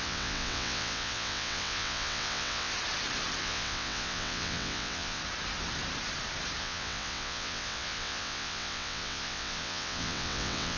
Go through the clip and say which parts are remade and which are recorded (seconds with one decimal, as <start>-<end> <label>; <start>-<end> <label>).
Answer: 0.0-2.7 remade; 2.7-3.4 recorded; 3.4-5.2 remade; 5.2-6.6 recorded; 6.6-10.8 remade